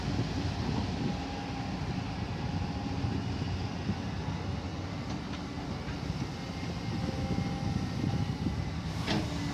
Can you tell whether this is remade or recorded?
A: recorded